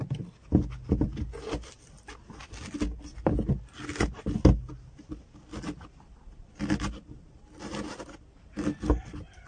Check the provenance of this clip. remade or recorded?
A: recorded